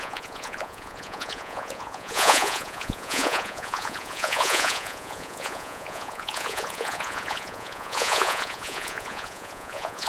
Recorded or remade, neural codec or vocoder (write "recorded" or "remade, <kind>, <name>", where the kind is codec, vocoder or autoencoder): remade, vocoder, Vocos